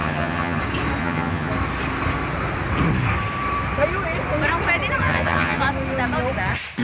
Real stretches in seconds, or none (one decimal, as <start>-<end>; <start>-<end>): 0.6-1.0; 1.5-5.0; 5.6-6.8